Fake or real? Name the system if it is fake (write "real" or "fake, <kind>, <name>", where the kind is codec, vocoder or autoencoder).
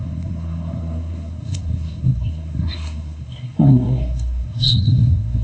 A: fake, codec, SNAC